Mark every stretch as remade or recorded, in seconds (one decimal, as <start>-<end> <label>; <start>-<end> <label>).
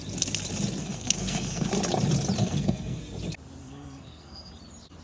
0.0-0.8 recorded; 0.8-1.7 remade; 1.7-2.4 recorded; 2.4-3.0 remade; 3.0-3.6 recorded; 3.6-4.5 remade; 4.5-5.0 recorded